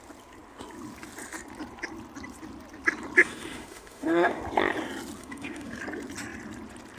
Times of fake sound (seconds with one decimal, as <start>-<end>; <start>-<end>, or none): 3.2-4.4; 5.2-5.8